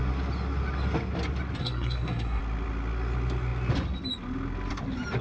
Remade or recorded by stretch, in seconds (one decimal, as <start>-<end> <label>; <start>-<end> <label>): 0.0-1.6 recorded; 1.6-2.4 remade; 2.4-5.2 recorded

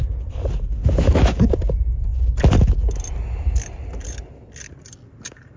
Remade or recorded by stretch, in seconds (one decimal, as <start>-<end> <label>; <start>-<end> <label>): 0.0-5.6 recorded

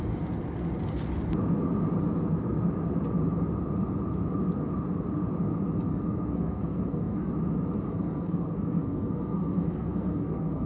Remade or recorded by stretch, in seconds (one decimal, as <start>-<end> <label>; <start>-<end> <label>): 0.0-5.9 recorded; 5.9-7.3 remade; 7.3-7.9 recorded; 7.9-10.7 remade

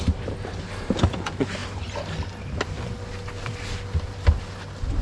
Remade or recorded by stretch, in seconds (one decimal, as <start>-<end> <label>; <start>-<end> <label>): 0.0-5.0 recorded

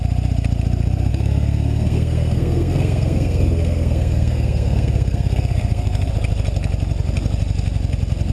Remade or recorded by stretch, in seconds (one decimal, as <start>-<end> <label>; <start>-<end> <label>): 0.0-1.1 recorded; 1.1-6.1 remade; 6.1-8.3 recorded

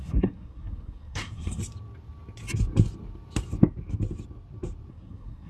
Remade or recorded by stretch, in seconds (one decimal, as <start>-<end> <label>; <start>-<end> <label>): 0.0-1.6 remade; 1.6-4.9 recorded; 4.9-5.5 remade